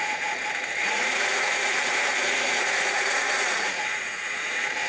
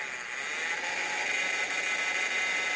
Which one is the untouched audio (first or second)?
second